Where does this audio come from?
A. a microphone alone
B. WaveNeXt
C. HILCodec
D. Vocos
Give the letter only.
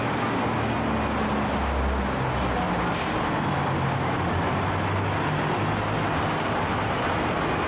A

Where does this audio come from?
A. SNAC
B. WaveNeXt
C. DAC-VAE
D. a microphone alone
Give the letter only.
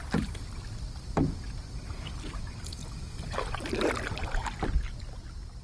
D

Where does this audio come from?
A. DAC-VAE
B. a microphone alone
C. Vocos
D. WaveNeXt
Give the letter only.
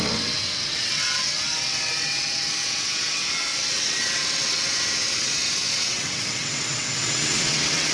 D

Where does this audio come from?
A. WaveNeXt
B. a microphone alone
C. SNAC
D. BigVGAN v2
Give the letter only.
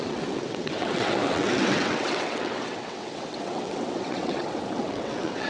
A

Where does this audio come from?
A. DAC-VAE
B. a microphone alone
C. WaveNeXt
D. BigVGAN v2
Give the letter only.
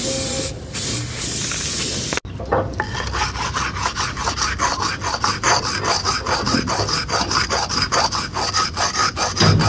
B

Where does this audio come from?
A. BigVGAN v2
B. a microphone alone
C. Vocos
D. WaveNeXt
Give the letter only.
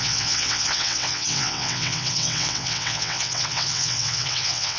D